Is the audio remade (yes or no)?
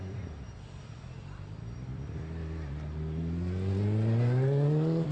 no